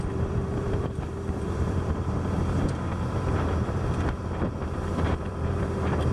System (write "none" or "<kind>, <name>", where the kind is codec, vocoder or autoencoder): vocoder, BigVGAN v2